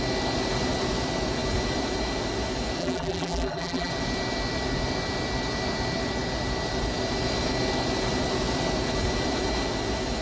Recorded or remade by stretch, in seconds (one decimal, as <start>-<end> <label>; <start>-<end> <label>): 0.0-2.8 recorded; 2.8-3.9 remade; 3.9-10.2 recorded